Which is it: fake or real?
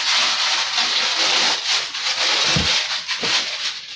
real